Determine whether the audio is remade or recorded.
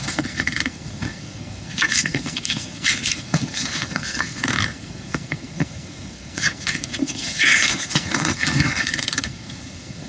remade